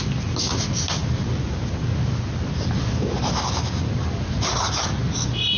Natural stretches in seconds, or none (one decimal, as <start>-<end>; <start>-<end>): 0.0-1.0; 2.6-5.6